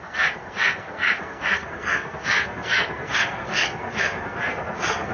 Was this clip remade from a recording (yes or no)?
yes